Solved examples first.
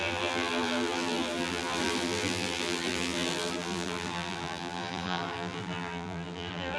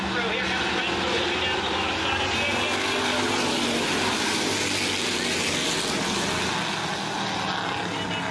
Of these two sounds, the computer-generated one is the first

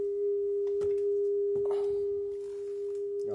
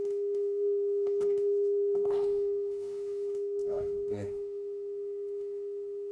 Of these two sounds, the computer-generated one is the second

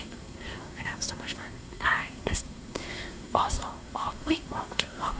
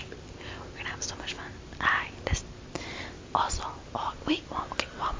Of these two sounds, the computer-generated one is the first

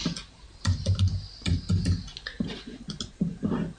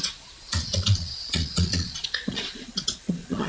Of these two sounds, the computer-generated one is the second